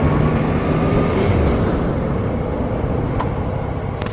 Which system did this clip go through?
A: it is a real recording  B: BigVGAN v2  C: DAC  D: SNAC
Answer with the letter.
A